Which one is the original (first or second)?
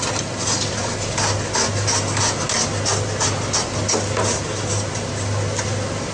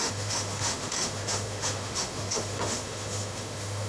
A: first